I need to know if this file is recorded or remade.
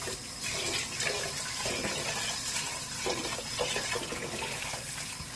recorded